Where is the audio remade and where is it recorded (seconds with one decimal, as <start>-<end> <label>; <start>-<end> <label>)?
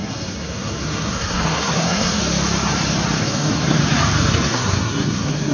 0.0-2.2 remade; 2.2-3.2 recorded; 3.2-3.8 remade; 3.8-4.3 recorded; 4.3-5.5 remade